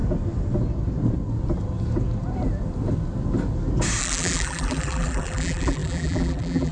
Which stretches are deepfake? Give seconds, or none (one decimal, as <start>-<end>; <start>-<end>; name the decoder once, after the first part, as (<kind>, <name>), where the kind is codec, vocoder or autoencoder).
4.0-6.7 (vocoder, BigVGAN v2)